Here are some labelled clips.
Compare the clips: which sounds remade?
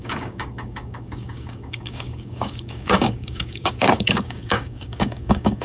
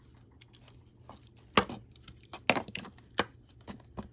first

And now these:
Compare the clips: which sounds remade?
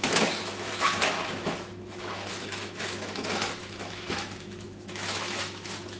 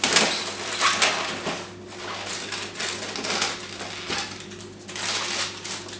first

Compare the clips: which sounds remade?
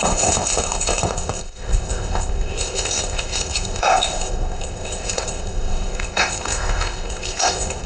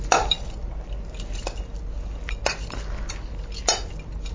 first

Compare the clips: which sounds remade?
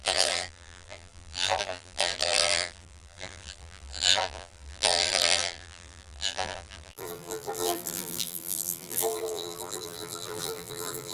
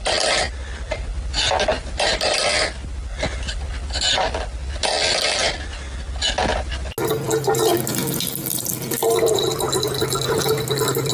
first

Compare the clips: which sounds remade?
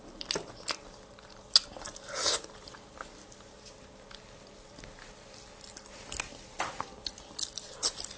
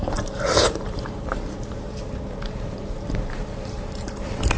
second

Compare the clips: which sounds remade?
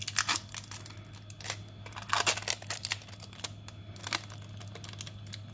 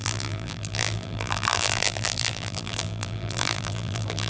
second